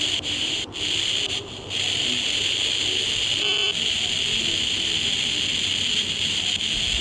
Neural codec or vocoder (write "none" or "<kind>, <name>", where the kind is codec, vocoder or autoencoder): none